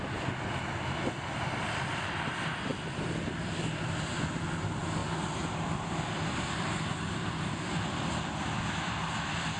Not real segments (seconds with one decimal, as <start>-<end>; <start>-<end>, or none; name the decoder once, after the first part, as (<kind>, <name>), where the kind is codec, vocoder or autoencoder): none